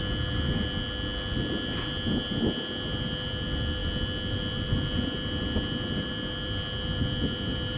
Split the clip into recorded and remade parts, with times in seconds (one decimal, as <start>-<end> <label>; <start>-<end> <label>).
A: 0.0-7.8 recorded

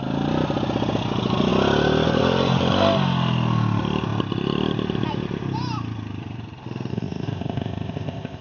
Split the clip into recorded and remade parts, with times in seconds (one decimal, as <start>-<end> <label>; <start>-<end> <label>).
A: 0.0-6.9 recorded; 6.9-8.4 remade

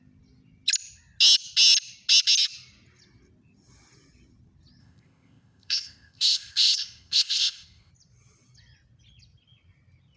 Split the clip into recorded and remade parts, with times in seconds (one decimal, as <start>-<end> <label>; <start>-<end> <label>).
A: 0.0-4.8 recorded; 4.8-7.9 remade; 7.9-10.2 recorded

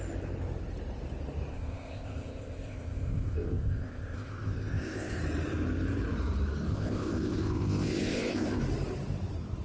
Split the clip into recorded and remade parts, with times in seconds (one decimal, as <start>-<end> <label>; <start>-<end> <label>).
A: 0.0-1.5 recorded; 1.5-5.2 remade; 5.2-6.7 recorded; 6.7-8.6 remade; 8.6-9.6 recorded